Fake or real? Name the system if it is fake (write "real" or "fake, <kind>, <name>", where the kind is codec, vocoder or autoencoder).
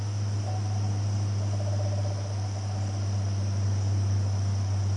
real